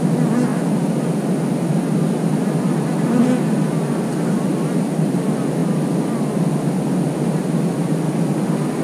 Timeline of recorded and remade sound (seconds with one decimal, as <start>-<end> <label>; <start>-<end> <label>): 0.0-8.8 recorded